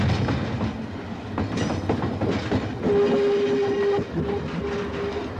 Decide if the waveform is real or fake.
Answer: real